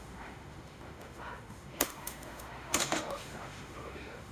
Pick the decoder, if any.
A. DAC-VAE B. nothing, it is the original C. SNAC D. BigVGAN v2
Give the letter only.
A